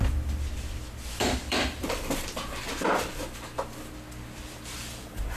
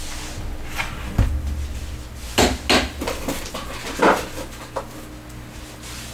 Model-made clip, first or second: first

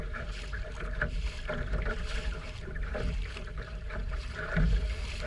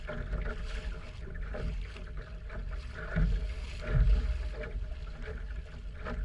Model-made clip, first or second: first